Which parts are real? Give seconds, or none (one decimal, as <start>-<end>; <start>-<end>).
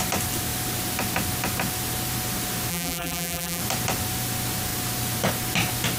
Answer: 0.0-2.7; 3.6-6.0